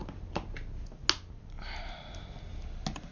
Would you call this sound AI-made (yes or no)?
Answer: no